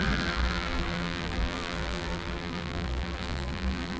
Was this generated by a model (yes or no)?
yes